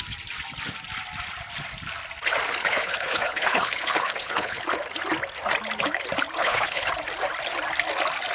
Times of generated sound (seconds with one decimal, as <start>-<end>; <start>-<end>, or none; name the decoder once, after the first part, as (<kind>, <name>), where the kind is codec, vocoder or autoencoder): 2.6-4.6 (codec, HILCodec); 6.4-6.9